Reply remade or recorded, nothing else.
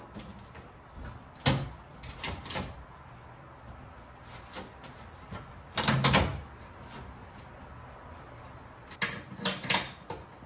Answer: recorded